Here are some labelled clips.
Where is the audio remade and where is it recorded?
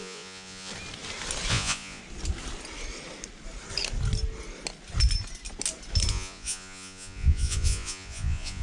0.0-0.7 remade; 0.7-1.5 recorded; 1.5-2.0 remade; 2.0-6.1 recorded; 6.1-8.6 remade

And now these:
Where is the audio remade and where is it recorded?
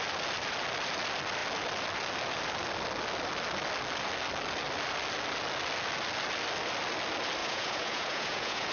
0.0-7.4 recorded; 7.4-8.7 remade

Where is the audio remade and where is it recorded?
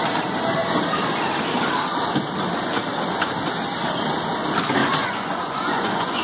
0.0-4.8 recorded; 4.8-6.2 remade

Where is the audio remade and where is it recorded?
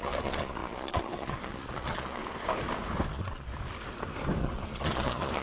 0.0-2.2 remade; 2.2-3.1 recorded; 3.1-3.5 remade; 3.5-4.4 recorded; 4.4-5.4 remade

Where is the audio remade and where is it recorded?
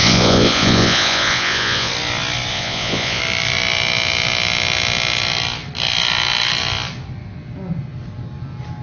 0.0-1.9 remade; 1.9-2.5 recorded; 2.5-3.2 remade; 3.2-8.8 recorded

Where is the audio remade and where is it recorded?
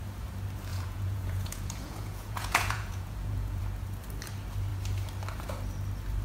0.0-0.7 recorded; 0.7-3.6 remade; 3.6-6.2 recorded